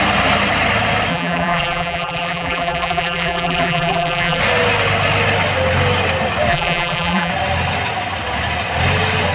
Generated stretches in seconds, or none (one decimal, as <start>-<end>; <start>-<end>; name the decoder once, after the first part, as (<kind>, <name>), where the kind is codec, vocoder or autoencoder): 1.1-4.4 (vocoder, BigVGAN v2); 6.5-7.3